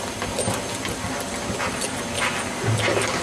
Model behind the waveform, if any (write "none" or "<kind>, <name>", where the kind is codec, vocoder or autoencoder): none